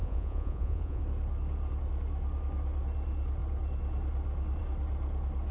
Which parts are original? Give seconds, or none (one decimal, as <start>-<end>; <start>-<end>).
1.0-5.5